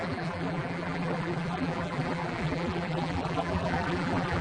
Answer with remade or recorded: remade